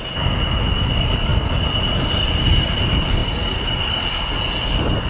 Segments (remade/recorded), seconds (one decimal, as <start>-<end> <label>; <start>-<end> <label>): 0.0-5.1 recorded